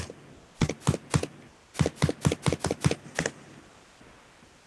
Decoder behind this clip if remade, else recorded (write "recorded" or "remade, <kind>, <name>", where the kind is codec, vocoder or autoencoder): recorded